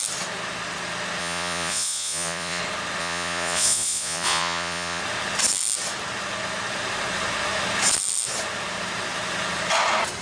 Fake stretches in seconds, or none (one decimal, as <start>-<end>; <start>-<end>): 1.2-2.6; 3.0-5.0